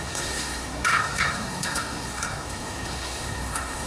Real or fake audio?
fake